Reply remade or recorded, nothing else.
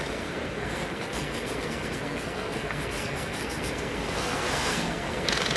remade